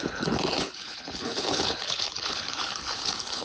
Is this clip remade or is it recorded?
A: remade